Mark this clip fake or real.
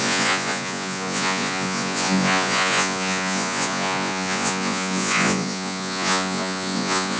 fake